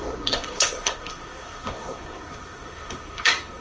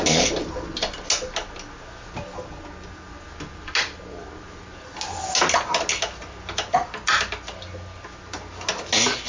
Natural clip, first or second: second